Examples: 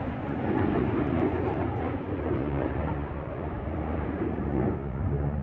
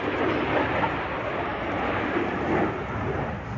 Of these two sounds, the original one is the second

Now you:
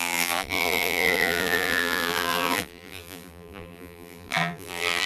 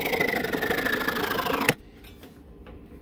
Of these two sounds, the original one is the second